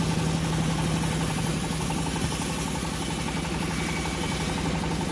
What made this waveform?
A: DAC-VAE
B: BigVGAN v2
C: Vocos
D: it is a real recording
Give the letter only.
D